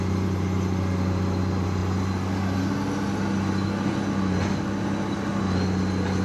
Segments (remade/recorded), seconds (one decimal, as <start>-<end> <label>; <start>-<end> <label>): 0.0-6.2 recorded